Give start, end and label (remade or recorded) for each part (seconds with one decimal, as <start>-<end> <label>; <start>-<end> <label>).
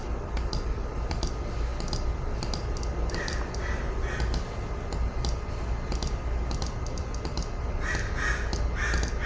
0.0-9.3 recorded